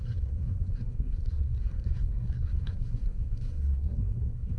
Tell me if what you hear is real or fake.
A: fake